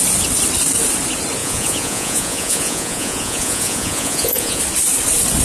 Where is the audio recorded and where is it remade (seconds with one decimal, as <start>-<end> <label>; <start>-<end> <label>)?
0.0-1.4 recorded; 1.4-4.6 remade; 4.6-5.4 recorded